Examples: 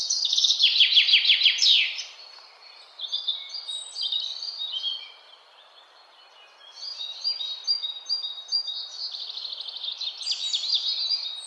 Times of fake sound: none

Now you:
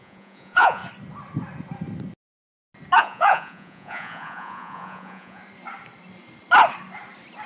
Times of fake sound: 0.0-0.8 (vocoder, Vocos); 3.0-5.4

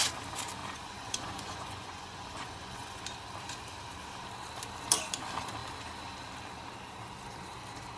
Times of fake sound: 0.6-3.0 (vocoder, Vocos)